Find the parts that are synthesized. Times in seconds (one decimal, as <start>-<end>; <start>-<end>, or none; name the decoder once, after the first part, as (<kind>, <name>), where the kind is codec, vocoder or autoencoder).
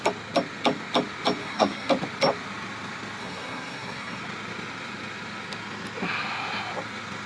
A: 1.4-1.9 (codec, SNAC); 3.2-4.2